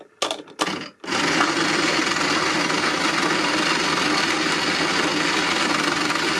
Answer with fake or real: real